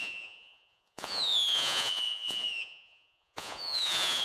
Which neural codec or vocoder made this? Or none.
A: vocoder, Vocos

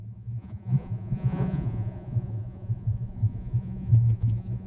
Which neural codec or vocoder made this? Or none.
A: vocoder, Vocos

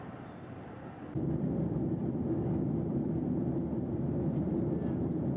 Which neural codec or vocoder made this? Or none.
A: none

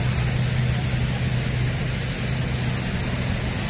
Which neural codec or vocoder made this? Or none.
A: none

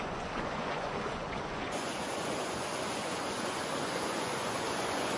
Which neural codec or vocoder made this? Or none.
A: vocoder, Vocos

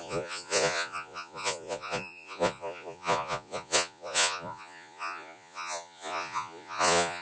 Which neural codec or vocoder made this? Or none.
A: vocoder, Vocos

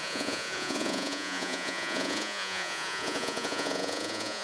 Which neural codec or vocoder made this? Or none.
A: vocoder, Vocos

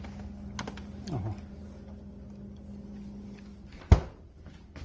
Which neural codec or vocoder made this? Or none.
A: none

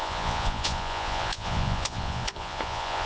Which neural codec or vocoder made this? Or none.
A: vocoder, Vocos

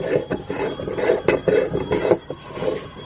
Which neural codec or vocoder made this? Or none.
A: none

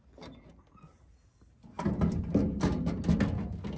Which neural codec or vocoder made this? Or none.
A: none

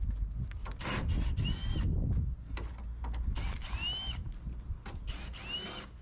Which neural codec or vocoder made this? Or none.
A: none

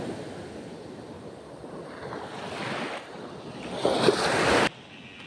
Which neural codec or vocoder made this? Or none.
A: none